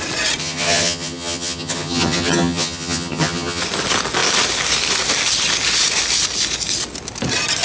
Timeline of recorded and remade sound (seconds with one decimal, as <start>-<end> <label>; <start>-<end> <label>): 0.0-0.4 recorded; 0.4-3.6 remade; 3.6-7.6 recorded